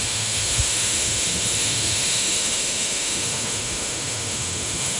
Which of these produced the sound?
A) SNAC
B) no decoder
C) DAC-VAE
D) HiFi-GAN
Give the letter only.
C